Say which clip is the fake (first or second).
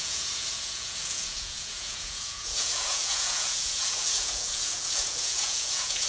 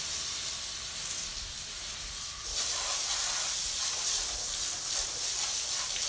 first